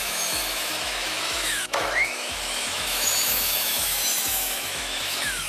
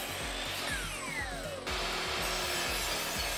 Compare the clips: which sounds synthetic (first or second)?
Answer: first